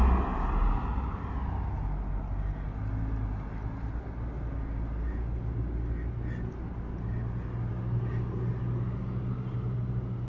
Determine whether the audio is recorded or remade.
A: recorded